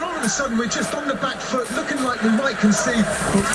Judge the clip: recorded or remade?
recorded